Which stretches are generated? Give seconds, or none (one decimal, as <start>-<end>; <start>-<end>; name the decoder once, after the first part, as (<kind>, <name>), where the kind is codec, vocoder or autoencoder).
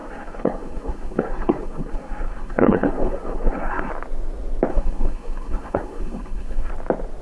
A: 0.0-3.9 (codec, SNAC); 4.7-6.7